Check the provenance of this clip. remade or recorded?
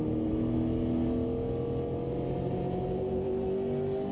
recorded